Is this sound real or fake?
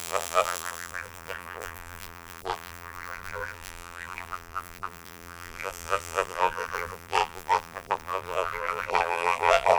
fake